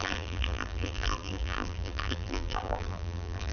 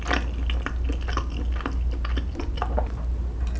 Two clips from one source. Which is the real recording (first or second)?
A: second